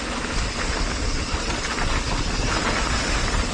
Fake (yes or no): no